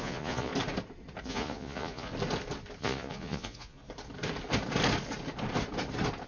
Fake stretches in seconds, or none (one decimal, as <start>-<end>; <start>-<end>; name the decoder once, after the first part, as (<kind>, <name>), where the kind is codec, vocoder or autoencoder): 0.0-0.5 (vocoder, Vocos); 1.2-2.1; 2.8-3.8